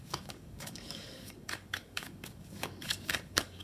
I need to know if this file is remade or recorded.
remade